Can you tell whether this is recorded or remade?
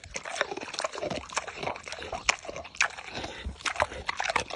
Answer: recorded